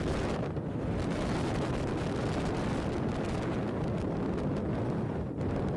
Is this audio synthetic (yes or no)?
no